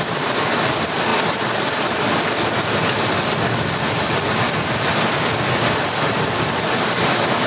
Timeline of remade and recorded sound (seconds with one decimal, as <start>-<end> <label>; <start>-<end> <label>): 0.0-7.5 recorded